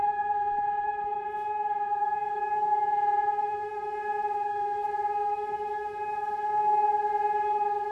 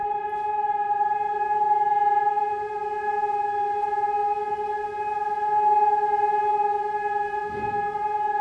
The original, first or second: second